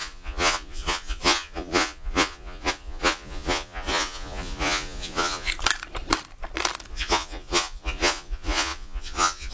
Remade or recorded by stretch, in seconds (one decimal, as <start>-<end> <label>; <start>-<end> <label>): 0.0-5.5 remade; 5.5-6.9 recorded; 6.9-9.5 remade